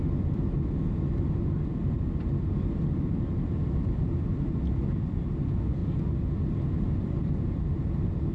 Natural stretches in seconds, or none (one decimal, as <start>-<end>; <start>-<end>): 0.0-8.3